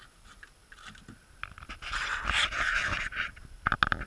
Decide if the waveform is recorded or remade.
recorded